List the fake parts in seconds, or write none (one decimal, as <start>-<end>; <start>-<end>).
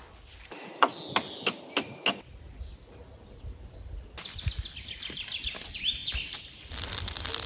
6.0-7.5